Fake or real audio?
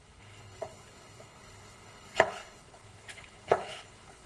fake